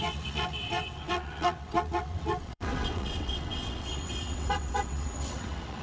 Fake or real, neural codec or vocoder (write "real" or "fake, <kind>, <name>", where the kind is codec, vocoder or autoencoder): fake, vocoder, WaveNeXt